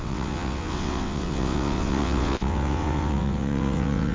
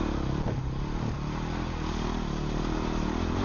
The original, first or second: second